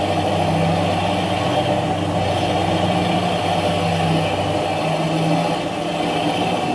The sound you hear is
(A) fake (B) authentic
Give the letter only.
B